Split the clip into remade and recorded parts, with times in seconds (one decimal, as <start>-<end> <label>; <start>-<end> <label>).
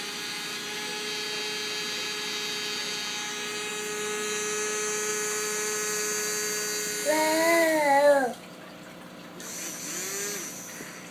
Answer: 0.0-11.1 recorded